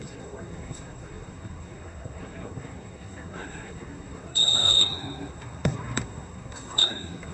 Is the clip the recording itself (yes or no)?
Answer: no